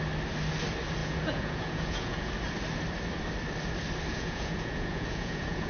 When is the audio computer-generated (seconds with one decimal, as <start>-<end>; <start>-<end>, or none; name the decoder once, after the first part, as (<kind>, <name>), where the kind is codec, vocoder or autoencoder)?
1.0-2.3 (vocoder, Vocos); 4.1-5.7